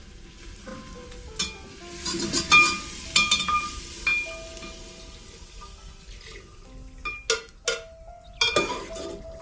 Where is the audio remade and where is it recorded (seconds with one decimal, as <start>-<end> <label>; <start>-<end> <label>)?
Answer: 0.0-9.4 recorded